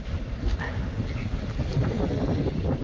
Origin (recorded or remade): recorded